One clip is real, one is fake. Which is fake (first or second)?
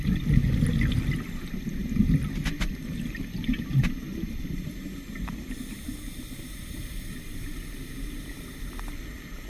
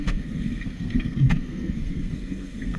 second